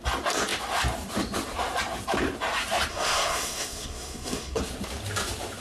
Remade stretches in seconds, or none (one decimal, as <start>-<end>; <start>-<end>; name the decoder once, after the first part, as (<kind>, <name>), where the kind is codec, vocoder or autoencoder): 2.9-4.6 (codec, SNAC)